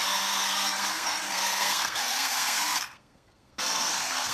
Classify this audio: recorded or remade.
remade